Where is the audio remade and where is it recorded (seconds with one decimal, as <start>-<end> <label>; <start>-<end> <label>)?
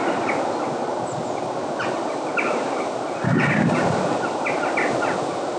0.0-5.6 recorded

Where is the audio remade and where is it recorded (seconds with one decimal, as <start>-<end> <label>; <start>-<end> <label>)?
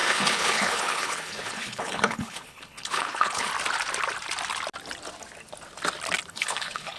0.0-3.5 remade; 3.5-6.3 recorded; 6.3-7.0 remade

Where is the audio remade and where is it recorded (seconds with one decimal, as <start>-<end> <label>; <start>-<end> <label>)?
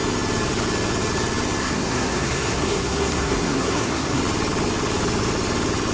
0.0-1.6 recorded; 1.6-4.2 remade; 4.2-5.9 recorded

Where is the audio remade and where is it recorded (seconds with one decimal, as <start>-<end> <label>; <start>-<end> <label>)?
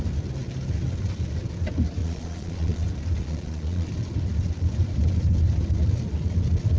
0.0-2.0 recorded; 2.0-2.8 remade; 2.8-3.2 recorded; 3.2-3.9 remade; 3.9-6.8 recorded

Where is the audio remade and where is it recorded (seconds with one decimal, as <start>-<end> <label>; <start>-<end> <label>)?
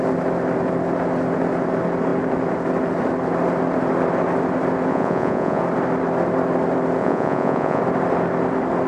0.0-4.9 recorded; 4.9-5.6 remade; 5.6-7.0 recorded; 7.0-7.8 remade; 7.8-8.9 recorded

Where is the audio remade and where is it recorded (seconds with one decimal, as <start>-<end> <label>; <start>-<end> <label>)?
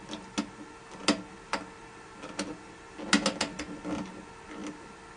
0.0-5.2 recorded